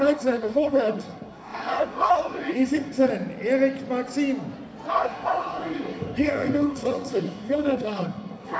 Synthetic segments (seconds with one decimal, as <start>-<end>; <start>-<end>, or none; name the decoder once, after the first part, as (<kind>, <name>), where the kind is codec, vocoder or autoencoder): 0.0-3.1 (codec, SNAC); 4.9-8.6